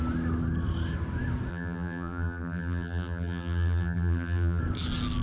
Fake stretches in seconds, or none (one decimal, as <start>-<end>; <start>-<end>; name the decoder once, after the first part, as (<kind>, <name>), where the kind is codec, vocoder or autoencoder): 1.5-4.6 (vocoder, BigVGAN v2)